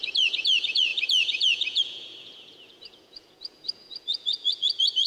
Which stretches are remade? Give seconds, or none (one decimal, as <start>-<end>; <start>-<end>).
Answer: 0.0-5.1